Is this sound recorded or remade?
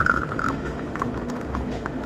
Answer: remade